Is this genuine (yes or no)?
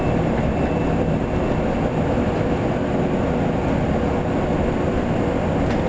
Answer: yes